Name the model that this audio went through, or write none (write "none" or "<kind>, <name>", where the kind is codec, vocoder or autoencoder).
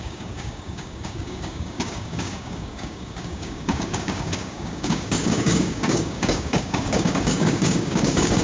codec, DAC